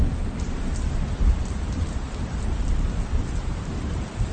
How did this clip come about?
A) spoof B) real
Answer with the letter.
A